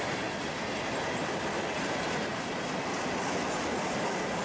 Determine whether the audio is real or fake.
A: real